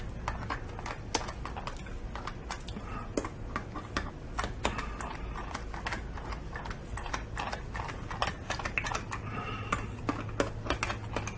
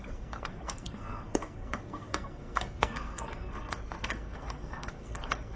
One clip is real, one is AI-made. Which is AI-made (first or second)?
second